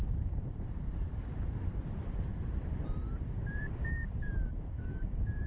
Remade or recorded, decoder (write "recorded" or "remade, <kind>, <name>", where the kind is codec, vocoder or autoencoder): remade, vocoder, BigVGAN v2